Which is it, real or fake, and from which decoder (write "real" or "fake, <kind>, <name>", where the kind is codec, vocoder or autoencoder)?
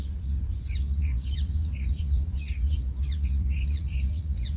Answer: fake, vocoder, Vocos